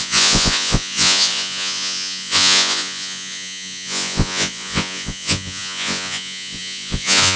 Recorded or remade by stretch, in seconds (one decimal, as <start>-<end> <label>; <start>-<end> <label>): 0.0-7.4 remade